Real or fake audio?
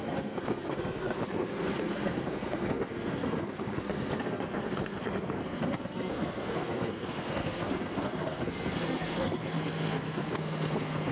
fake